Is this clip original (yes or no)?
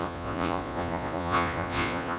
no